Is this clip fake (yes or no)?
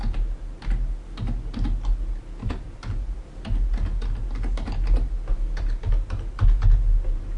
no